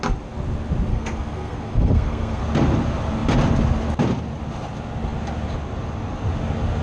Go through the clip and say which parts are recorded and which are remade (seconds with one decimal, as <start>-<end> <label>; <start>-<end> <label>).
0.0-0.9 recorded; 0.9-2.4 remade; 2.4-6.8 recorded